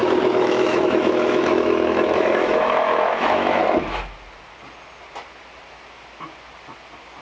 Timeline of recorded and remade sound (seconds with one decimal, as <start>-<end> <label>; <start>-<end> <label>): 0.0-3.6 remade; 3.6-7.2 recorded